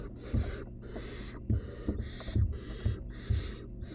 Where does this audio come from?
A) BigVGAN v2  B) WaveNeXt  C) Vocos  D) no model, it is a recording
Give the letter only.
D